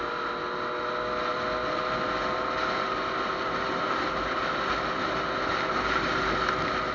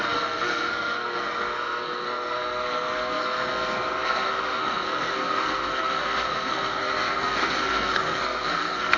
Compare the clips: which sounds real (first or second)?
first